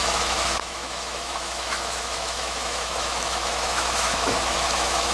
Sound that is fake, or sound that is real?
fake